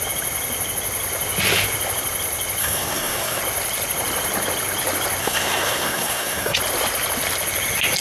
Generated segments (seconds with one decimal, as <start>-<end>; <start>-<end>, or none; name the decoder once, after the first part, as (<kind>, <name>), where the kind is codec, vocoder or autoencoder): 2.6-3.4 (codec, SNAC); 5.2-6.6